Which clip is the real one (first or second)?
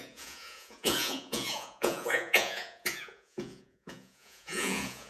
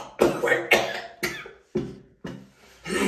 second